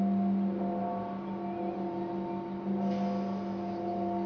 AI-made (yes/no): no